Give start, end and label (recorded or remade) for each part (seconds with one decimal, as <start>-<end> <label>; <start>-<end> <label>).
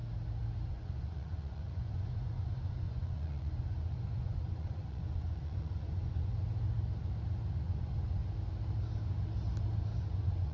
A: 0.0-0.7 recorded; 0.7-6.3 remade; 6.3-7.5 recorded; 7.5-8.2 remade; 8.2-10.0 recorded; 10.0-10.5 remade